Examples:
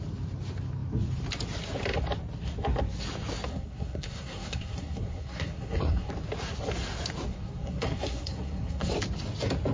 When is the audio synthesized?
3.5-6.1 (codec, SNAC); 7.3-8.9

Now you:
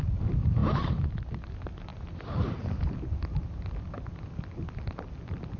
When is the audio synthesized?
1.9-4.5 (vocoder, BigVGAN v2)

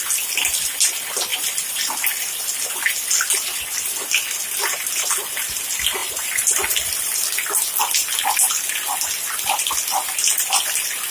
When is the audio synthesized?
1.3-3.8 (vocoder, BigVGAN v2); 6.0-7.5